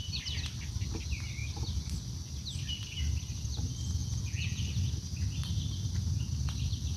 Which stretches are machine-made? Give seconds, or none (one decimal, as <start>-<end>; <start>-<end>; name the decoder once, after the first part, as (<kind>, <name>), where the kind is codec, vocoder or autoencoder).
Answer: 4.0-4.6 (vocoder, Vocos)